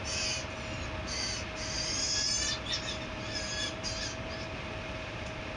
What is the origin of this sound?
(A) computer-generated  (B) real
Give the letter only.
B